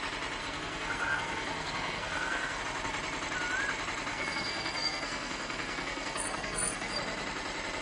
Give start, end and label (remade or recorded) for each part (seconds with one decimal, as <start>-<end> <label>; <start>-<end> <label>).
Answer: 0.0-0.4 recorded; 0.4-2.6 remade; 2.6-4.1 recorded; 4.1-6.9 remade; 6.9-7.8 recorded